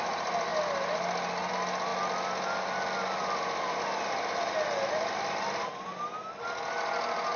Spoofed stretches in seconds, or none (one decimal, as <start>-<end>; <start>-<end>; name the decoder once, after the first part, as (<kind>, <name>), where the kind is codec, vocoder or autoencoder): none